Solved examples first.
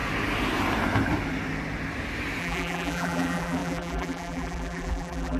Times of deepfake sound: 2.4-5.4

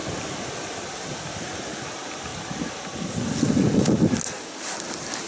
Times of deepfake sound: none

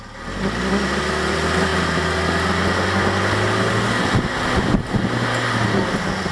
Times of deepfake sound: none

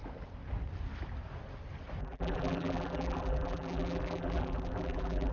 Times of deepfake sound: 2.0-5.3

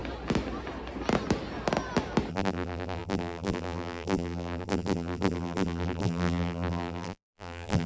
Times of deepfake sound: 2.3-7.9

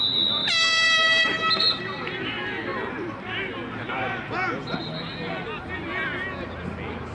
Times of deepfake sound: 0.4-1.8

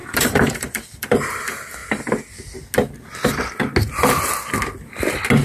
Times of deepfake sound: 0.0-1.4